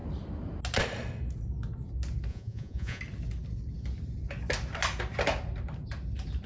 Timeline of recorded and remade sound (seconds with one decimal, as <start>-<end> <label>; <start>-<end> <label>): 0.0-2.3 recorded; 2.3-3.0 remade; 3.0-6.5 recorded